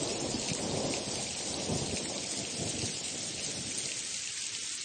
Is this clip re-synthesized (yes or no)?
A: no